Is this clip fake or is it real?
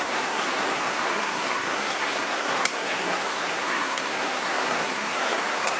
fake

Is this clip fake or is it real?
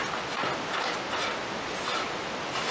real